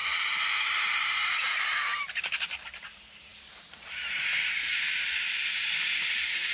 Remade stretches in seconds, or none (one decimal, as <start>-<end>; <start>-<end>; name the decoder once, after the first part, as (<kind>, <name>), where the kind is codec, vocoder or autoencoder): 0.0-2.8 (vocoder, BigVGAN v2)